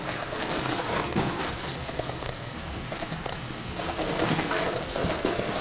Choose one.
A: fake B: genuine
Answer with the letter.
A